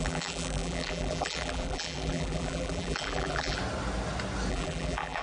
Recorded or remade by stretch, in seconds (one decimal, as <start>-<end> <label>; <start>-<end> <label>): 0.0-3.6 remade; 3.6-4.5 recorded; 4.5-5.2 remade